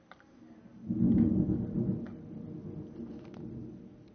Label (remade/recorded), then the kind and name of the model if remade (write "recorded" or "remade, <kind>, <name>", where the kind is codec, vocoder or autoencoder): recorded